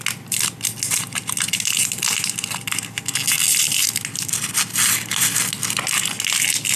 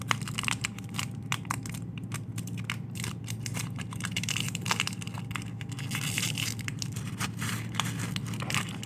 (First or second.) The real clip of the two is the first